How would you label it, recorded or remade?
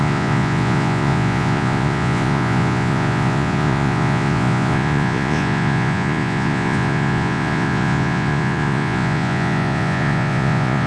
remade